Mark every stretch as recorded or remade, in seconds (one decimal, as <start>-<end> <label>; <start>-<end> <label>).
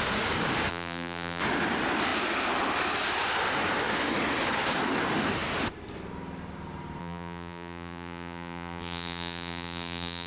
0.0-0.7 recorded; 0.7-1.4 remade; 1.4-7.0 recorded; 7.0-10.3 remade